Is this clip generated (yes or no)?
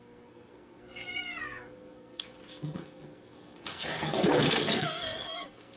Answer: yes